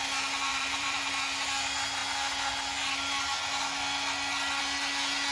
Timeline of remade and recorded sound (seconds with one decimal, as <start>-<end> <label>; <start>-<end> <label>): 0.0-0.5 recorded; 0.5-1.1 remade; 1.1-5.3 recorded